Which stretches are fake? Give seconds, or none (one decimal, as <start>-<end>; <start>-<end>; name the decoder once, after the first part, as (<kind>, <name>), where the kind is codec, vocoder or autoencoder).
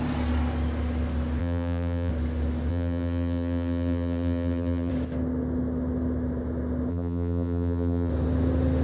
1.4-2.1 (vocoder, BigVGAN v2); 2.7-4.9; 6.9-8.1